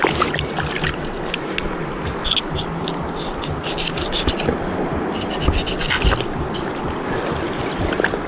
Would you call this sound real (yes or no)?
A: yes